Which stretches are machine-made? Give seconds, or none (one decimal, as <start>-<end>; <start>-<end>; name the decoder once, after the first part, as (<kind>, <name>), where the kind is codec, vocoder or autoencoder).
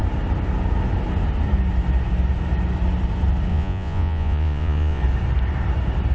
3.5-5.0 (vocoder, Vocos)